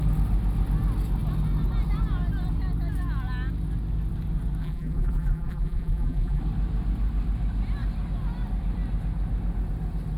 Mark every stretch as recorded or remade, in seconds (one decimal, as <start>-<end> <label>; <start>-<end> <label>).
0.0-4.6 recorded; 4.6-6.4 remade; 6.4-10.2 recorded